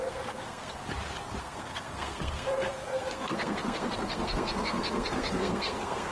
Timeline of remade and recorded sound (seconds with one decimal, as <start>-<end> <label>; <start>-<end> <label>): 0.0-0.8 remade; 0.8-1.4 recorded; 1.4-6.1 remade